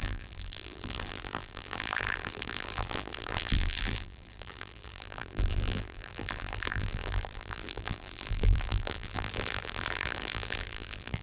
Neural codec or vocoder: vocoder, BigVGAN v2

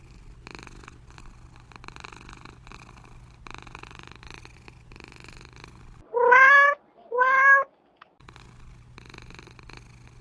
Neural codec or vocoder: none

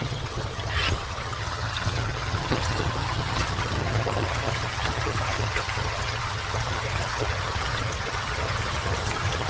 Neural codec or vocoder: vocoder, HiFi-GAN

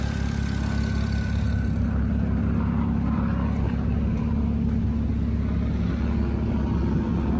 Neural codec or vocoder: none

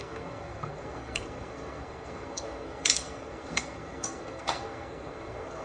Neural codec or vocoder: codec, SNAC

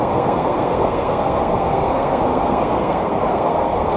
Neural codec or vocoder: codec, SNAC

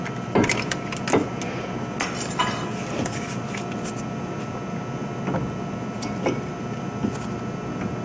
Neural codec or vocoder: none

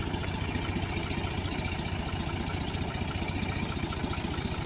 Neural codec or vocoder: none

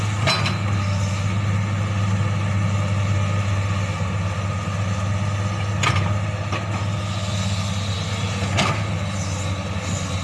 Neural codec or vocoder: none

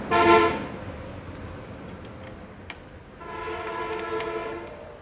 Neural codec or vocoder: none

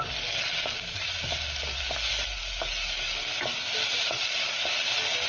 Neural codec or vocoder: none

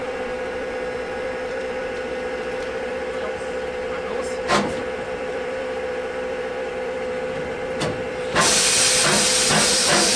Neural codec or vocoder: vocoder, BigVGAN v2